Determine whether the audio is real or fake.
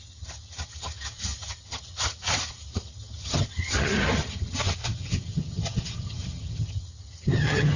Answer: fake